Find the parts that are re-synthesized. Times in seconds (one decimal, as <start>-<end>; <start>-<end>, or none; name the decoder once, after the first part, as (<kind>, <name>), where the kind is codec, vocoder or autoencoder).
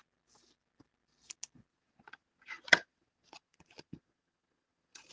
1.7-5.1 (vocoder, Vocos)